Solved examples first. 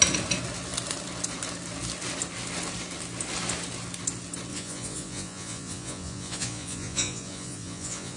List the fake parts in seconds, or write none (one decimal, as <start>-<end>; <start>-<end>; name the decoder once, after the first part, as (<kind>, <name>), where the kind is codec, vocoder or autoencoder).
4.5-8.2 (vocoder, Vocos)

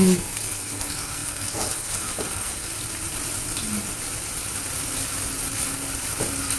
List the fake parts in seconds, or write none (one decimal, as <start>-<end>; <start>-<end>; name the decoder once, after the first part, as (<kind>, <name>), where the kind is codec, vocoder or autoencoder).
0.0-2.7 (codec, SNAC)

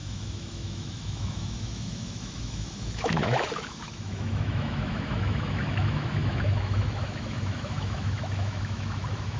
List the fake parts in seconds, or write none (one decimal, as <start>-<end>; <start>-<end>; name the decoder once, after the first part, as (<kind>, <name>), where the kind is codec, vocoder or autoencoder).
0.0-9.4 (autoencoder, DAC-VAE)